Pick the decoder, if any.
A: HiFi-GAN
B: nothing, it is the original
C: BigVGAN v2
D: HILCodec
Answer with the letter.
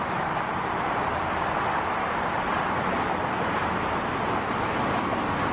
B